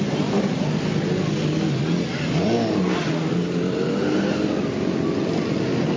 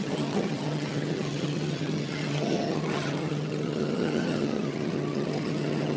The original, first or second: first